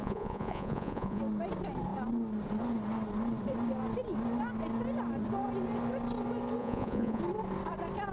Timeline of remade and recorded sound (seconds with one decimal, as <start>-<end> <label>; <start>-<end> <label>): 0.0-1.2 remade; 1.2-6.6 recorded; 6.6-7.2 remade; 7.2-8.1 recorded